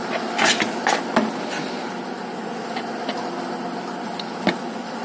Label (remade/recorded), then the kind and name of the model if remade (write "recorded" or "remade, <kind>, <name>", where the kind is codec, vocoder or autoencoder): recorded